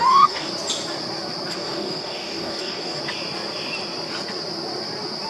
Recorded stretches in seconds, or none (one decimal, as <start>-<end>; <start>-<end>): 0.5-1.5; 3.0-5.3